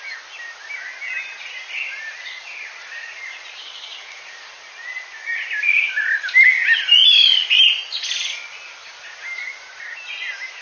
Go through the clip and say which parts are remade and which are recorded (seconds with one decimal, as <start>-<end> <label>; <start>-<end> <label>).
0.0-10.6 recorded